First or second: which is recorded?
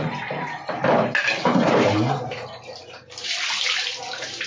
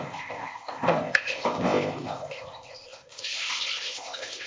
first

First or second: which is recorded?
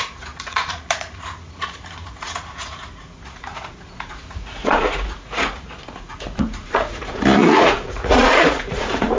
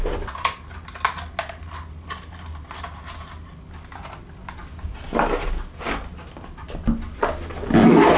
second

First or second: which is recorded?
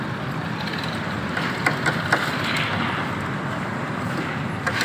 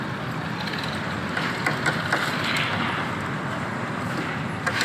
second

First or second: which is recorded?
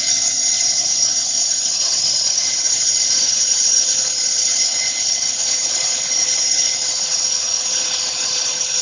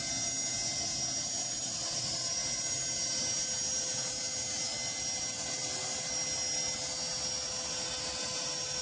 second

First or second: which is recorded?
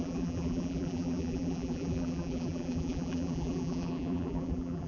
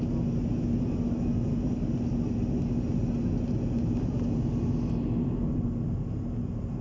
second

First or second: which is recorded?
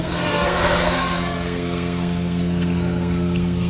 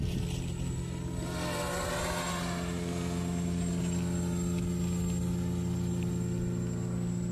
second